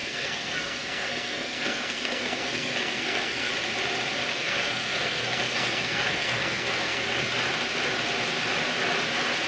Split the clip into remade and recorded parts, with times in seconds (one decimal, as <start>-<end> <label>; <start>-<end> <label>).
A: 0.0-3.5 remade; 3.5-4.3 recorded; 4.3-7.2 remade; 7.2-9.5 recorded